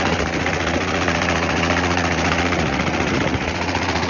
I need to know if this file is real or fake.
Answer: fake